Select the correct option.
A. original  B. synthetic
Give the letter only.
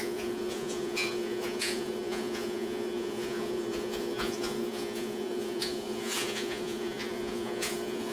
B